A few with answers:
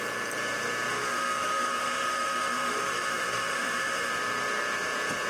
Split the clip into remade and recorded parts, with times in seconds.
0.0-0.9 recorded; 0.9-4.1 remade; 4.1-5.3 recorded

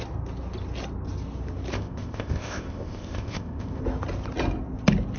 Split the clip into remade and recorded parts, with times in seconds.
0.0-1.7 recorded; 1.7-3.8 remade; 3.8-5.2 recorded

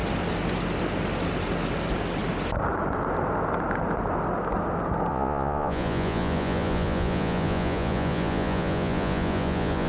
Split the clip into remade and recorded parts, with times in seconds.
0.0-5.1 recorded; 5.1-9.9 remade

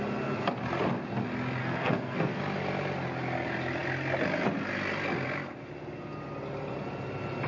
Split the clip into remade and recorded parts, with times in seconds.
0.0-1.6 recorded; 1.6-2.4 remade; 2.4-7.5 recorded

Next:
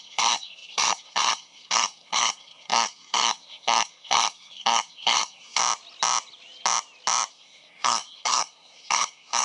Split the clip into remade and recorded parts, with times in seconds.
0.0-5.6 remade; 5.6-7.3 recorded; 7.3-9.4 remade

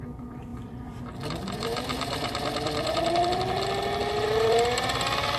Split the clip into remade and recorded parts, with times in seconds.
0.0-0.5 recorded; 0.5-3.6 remade; 3.6-4.0 recorded; 4.0-4.9 remade; 4.9-5.4 recorded